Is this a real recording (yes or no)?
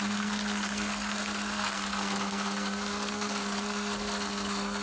no